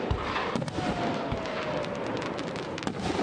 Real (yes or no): yes